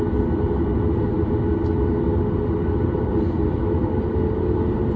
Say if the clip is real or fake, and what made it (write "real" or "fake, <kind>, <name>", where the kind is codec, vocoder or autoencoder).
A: real